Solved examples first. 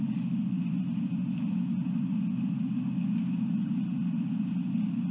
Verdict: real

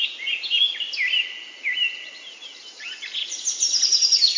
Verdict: real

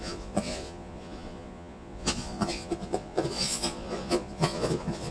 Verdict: fake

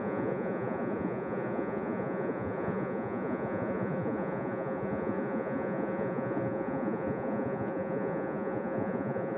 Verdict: fake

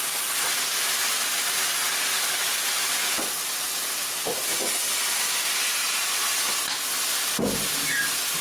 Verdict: real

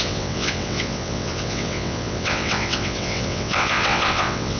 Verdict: fake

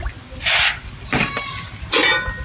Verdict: real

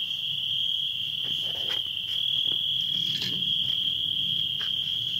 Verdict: real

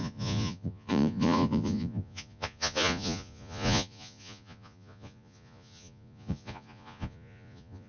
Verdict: fake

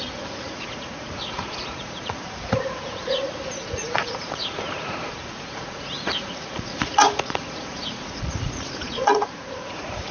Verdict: fake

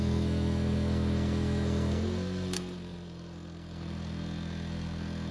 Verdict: fake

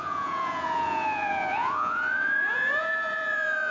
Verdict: fake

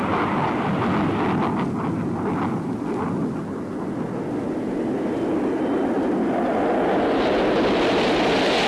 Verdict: real